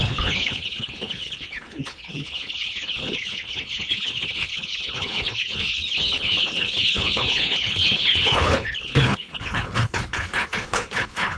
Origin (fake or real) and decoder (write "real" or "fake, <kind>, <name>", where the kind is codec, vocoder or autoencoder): fake, codec, HILCodec